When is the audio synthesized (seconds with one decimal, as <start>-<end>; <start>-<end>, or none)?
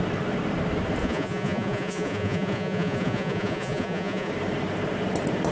1.0-4.3